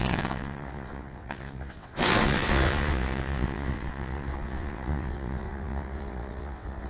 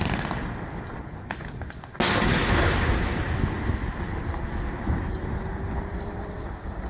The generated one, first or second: first